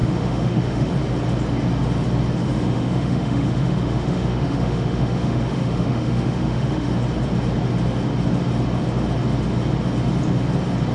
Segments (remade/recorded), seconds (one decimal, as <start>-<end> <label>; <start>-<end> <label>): 0.0-0.9 remade; 0.9-2.4 recorded; 2.4-6.9 remade; 6.9-10.9 recorded

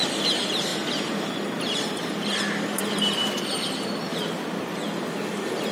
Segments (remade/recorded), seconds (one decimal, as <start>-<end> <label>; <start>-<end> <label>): 0.0-5.7 recorded

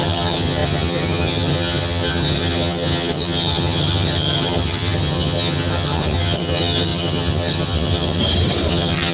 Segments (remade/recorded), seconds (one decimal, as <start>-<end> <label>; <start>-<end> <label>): 0.0-8.2 remade; 8.2-8.7 recorded; 8.7-9.1 remade

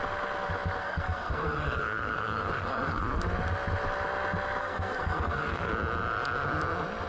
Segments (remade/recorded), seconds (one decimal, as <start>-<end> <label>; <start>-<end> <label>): 0.0-0.8 recorded; 0.8-3.0 remade; 3.0-4.6 recorded; 4.6-5.7 remade; 5.7-7.1 recorded

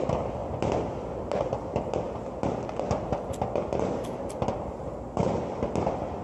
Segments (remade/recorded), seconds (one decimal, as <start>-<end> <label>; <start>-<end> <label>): 0.0-6.2 recorded